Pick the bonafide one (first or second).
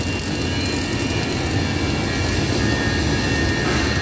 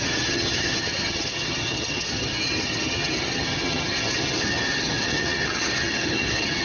first